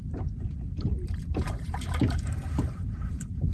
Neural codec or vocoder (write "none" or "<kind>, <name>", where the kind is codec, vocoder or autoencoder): vocoder, BigVGAN v2